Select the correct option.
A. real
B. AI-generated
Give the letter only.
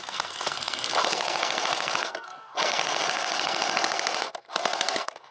B